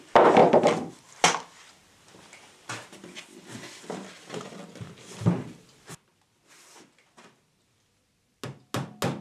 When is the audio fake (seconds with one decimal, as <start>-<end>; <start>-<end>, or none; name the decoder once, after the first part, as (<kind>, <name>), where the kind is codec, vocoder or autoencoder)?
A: none